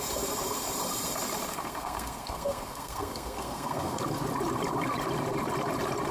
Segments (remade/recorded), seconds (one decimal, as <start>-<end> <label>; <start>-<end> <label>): 0.0-1.5 recorded; 1.5-4.0 remade; 4.0-6.1 recorded